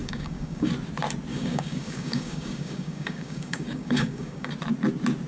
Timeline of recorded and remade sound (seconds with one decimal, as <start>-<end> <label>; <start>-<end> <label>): 0.0-0.7 remade; 0.7-1.3 recorded; 1.3-4.5 remade; 4.5-5.3 recorded